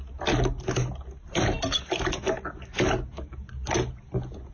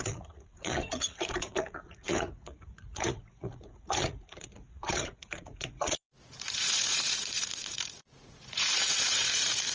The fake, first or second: second